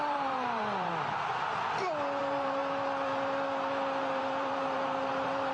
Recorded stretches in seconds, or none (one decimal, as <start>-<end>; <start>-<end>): 0.9-2.2; 2.6-4.0